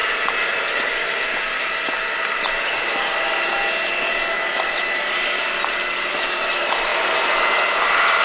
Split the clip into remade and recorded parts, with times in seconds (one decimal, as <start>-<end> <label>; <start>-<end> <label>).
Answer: 0.0-8.2 recorded